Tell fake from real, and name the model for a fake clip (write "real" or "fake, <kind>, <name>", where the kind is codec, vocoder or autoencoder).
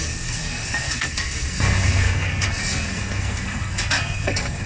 fake, codec, SNAC